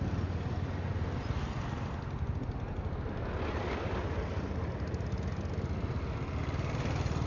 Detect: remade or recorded recorded